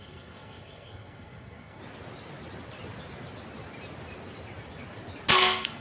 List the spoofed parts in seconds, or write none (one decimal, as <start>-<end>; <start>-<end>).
0.0-1.8; 5.3-5.8